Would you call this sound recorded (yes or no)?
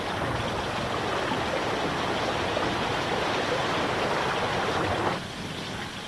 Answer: yes